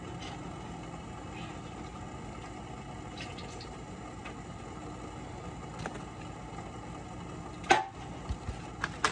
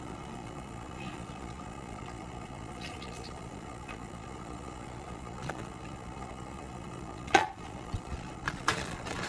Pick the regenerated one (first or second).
second